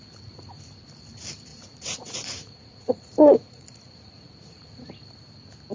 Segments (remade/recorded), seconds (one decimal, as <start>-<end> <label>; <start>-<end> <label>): 0.0-1.5 recorded; 1.5-4.9 remade; 4.9-5.7 recorded